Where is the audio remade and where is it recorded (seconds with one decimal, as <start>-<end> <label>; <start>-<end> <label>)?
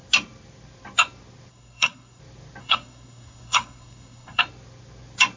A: 0.0-1.5 recorded; 1.5-2.2 remade; 2.2-2.6 recorded; 2.6-4.4 remade; 4.4-5.4 recorded